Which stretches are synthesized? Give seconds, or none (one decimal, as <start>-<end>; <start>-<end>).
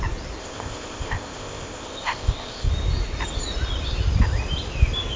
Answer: 0.4-2.7